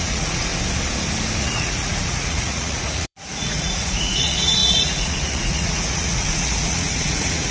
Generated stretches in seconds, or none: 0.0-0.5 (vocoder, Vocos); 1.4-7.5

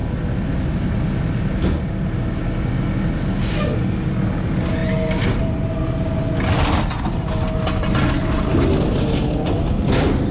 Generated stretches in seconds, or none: none

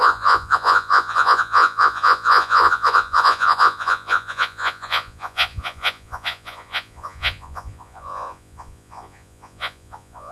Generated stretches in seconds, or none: 0.0-10.3 (vocoder, Vocos)

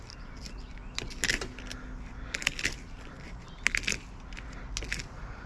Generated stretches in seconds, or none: none

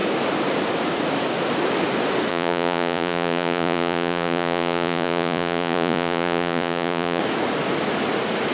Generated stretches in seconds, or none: 2.3-7.2 (vocoder, Vocos)

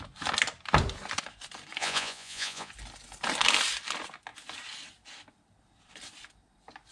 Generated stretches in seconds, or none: 1.8-2.7 (vocoder, Vocos)